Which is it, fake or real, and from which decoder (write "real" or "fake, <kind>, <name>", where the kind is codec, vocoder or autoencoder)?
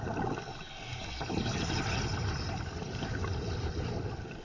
real